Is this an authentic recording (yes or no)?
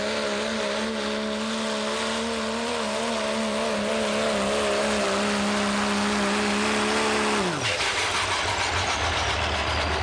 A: yes